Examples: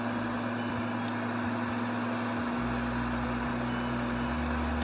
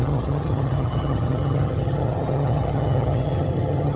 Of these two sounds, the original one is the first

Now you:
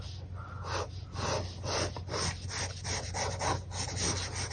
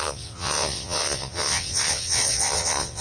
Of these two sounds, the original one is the first